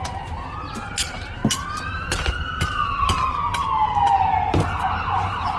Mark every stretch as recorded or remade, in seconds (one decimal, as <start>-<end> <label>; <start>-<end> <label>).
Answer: 0.0-5.6 recorded